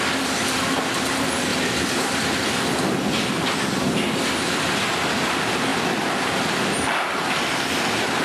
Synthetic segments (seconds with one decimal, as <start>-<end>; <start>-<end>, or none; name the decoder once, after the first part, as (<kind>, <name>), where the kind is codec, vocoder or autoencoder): 1.5-2.2 (vocoder, BigVGAN v2); 5.7-6.6